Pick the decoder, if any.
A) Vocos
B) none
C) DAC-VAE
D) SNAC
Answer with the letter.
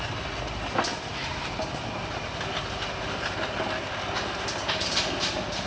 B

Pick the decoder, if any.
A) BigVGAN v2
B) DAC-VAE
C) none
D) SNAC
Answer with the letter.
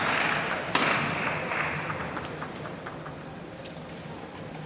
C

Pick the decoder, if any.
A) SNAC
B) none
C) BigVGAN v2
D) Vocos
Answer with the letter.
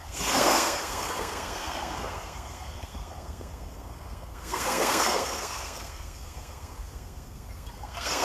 A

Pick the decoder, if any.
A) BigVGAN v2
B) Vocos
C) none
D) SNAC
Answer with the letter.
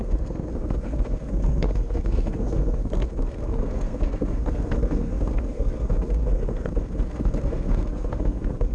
D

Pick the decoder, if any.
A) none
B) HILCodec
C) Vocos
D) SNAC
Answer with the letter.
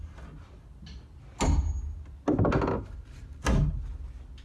A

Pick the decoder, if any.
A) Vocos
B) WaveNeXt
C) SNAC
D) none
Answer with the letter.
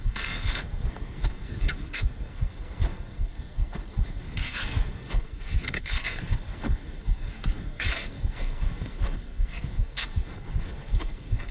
C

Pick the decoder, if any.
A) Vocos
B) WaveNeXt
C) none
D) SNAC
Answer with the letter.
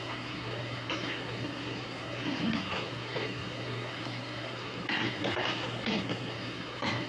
D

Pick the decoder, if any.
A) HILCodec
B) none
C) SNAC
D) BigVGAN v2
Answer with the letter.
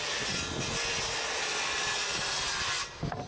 B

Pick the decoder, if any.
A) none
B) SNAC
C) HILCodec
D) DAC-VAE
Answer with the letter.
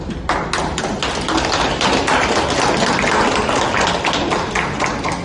A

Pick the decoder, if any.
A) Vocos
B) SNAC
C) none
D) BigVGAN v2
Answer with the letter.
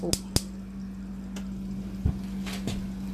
C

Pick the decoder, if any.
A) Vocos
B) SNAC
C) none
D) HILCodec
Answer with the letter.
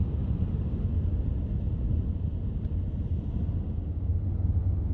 C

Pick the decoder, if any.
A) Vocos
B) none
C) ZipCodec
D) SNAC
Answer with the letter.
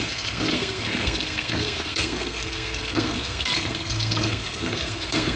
D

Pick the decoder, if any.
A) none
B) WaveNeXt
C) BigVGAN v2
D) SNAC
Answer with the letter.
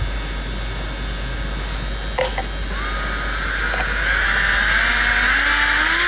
A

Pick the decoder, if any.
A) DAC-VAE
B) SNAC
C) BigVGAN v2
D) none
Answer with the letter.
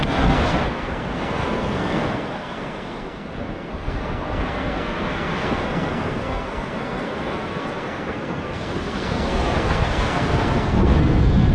B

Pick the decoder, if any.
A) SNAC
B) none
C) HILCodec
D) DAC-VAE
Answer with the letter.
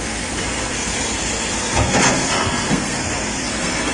A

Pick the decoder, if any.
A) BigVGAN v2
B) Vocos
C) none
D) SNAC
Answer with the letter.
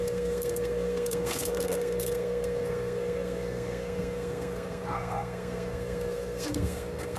D